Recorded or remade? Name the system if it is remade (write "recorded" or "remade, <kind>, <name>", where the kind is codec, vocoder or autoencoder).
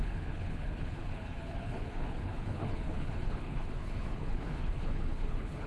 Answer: remade, codec, HILCodec